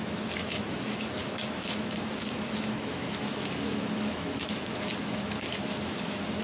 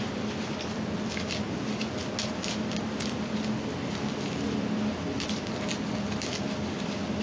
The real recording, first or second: second